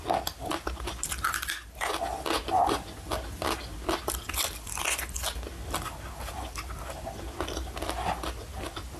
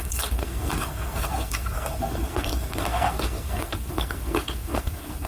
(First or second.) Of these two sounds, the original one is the first